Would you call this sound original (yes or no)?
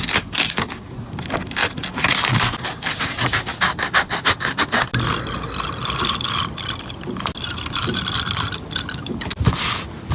yes